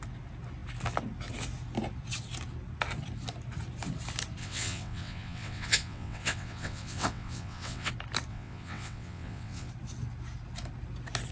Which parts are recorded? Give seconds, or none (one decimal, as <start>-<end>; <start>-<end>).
0.0-4.4; 7.9-8.3; 9.7-11.3